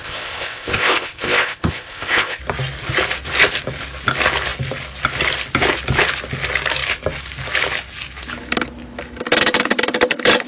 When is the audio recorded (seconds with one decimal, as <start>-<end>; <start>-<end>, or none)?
2.4-10.5